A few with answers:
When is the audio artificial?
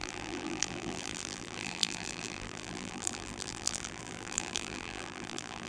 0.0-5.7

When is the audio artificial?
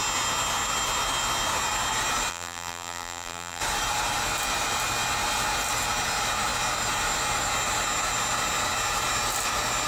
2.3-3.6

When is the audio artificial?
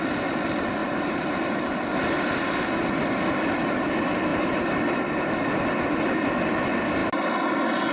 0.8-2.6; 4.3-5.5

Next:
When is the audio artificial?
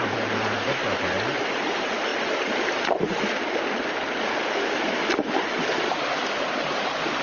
0.0-0.8; 1.7-2.1; 6.4-7.2